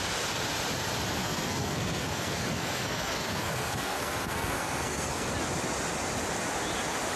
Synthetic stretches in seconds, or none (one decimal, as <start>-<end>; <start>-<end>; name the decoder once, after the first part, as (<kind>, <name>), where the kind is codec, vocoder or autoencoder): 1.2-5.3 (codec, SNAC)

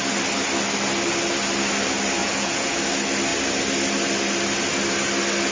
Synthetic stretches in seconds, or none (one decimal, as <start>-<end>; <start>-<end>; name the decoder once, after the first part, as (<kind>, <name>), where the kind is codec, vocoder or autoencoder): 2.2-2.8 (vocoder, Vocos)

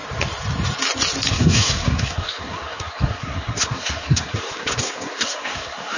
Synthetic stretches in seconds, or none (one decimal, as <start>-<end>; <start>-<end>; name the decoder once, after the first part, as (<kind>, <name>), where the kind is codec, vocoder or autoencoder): 1.3-6.0 (codec, SNAC)